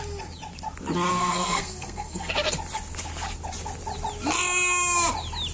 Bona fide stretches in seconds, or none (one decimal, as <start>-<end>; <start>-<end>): 0.0-1.1; 2.3-5.5